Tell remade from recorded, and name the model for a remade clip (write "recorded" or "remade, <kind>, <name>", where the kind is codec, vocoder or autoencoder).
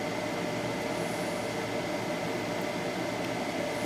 recorded